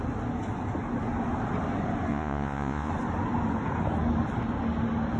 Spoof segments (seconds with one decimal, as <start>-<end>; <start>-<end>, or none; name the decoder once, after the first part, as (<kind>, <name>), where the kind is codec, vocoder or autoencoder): 2.1-2.9 (vocoder, Vocos)